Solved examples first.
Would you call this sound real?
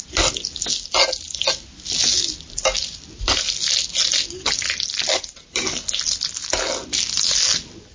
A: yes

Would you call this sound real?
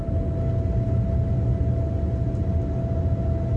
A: yes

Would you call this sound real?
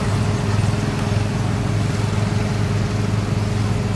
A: yes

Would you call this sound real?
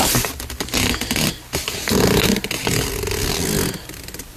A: yes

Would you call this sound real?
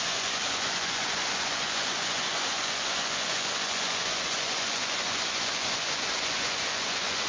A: no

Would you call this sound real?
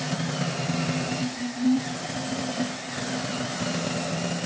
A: yes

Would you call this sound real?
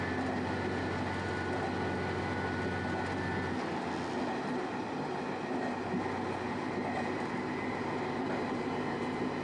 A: yes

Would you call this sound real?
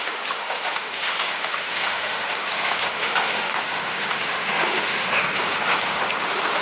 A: no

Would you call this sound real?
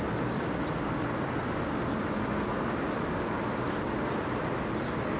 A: yes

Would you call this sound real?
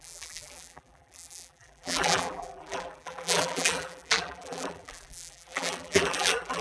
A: no